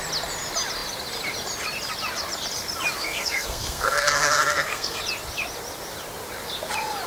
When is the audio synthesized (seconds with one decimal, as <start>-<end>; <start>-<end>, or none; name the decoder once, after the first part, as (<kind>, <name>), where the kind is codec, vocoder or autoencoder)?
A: 3.0-5.0 (codec, SNAC)